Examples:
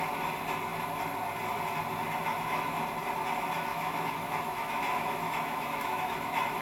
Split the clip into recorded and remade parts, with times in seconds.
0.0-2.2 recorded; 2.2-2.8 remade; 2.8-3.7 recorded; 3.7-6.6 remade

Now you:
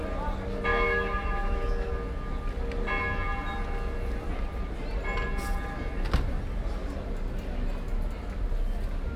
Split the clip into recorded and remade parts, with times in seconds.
0.0-0.7 recorded; 0.7-1.9 remade; 1.9-9.2 recorded